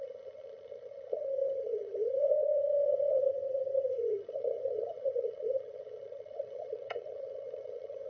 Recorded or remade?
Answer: remade